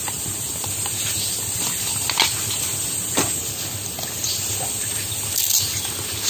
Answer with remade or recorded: recorded